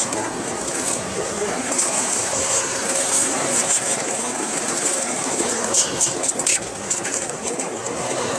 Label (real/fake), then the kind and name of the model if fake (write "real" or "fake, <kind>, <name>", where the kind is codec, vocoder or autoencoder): fake, codec, SNAC